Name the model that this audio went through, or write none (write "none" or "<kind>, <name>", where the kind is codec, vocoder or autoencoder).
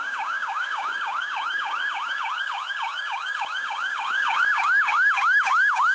codec, DAC